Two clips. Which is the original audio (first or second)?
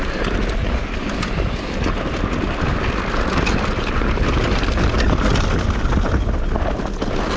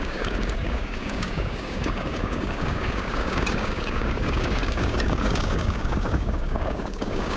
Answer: first